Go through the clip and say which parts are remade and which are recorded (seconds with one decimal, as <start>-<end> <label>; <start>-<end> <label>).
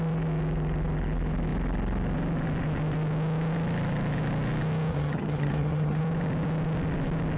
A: 0.0-4.9 recorded; 4.9-6.0 remade; 6.0-7.4 recorded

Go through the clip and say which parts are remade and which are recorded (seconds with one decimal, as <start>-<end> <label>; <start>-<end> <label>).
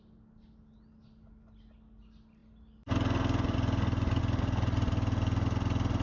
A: 0.0-6.0 recorded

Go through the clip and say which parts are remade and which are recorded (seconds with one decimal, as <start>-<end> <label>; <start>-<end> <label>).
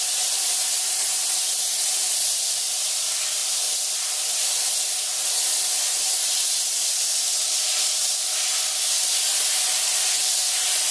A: 0.0-10.9 recorded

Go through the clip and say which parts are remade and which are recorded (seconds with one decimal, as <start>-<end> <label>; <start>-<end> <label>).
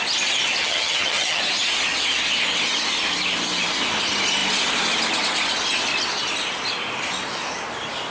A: 0.0-0.6 recorded; 0.6-1.4 remade; 1.4-8.1 recorded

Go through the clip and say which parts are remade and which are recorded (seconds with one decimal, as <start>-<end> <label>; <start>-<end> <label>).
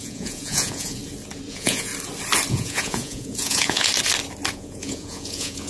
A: 0.0-1.0 remade; 1.0-1.5 recorded; 1.5-1.9 remade; 1.9-2.5 recorded; 2.5-3.9 remade; 3.9-4.5 recorded; 4.5-5.7 remade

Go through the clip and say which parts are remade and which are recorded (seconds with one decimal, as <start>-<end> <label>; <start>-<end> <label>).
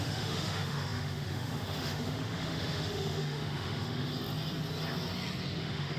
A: 0.0-4.1 remade; 4.1-5.6 recorded; 5.6-6.0 remade